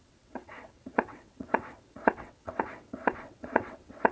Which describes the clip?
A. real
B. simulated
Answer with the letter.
B